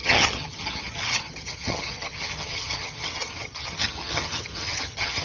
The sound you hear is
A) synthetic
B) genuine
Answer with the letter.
A